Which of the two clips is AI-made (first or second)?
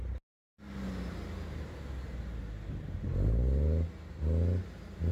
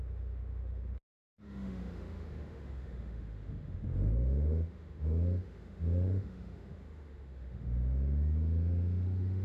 second